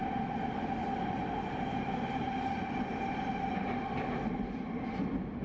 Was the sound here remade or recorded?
recorded